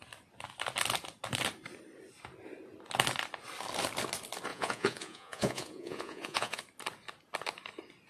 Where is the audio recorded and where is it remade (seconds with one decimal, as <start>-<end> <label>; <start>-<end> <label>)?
0.0-4.5 recorded; 4.5-6.6 remade; 6.6-8.1 recorded